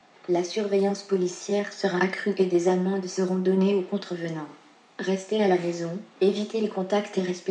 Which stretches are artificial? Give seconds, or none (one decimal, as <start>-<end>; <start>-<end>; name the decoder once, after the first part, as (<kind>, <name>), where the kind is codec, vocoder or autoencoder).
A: 0.0-0.9 (codec, DAC); 4.5-6.6

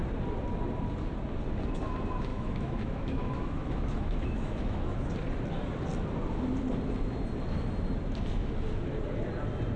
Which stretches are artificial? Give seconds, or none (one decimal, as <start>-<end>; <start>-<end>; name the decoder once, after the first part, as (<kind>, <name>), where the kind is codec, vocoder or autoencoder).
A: 2.3-5.1 (autoencoder, DAC-VAE)